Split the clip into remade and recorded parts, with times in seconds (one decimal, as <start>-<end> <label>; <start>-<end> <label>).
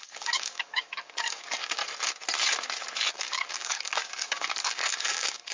0.0-1.8 remade; 1.8-3.1 recorded; 3.1-5.5 remade